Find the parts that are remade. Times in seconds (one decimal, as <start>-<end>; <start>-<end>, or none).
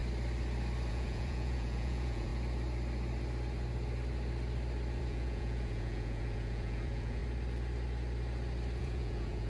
0.9-2.3; 5.0-7.2; 8.8-9.5